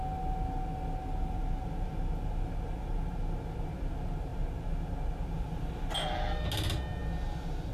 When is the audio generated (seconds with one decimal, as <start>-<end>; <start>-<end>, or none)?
none